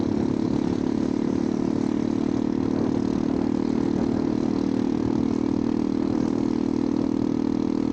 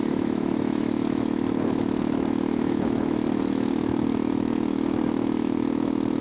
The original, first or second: first